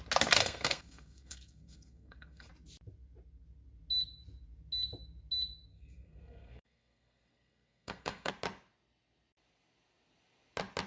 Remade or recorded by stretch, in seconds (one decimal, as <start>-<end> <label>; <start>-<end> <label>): 0.0-0.4 recorded; 0.4-2.5 remade; 2.5-5.7 recorded; 5.7-8.3 remade; 8.3-10.9 recorded